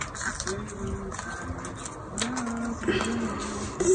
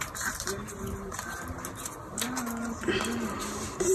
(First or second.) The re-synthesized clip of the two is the second